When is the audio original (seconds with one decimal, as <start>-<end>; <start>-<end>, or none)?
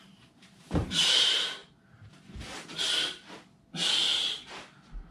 1.6-5.1